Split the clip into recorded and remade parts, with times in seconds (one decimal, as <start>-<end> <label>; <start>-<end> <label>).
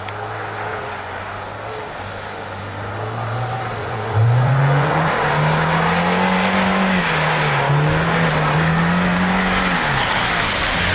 0.0-0.7 recorded; 0.7-1.2 remade; 1.2-3.8 recorded; 3.8-5.1 remade; 5.1-10.9 recorded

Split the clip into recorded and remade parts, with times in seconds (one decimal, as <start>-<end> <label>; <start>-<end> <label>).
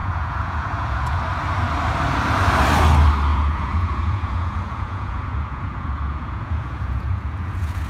0.0-1.2 remade; 1.2-3.3 recorded; 3.3-7.9 remade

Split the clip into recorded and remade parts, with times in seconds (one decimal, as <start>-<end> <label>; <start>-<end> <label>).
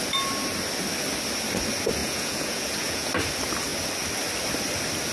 0.0-2.0 recorded; 2.0-3.1 remade; 3.1-5.1 recorded